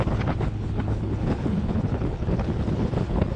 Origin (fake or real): fake